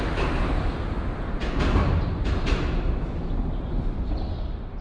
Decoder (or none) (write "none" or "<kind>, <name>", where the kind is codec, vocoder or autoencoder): none